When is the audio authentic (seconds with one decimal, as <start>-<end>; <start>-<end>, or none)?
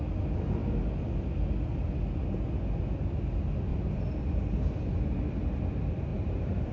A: 0.0-3.7; 4.2-6.1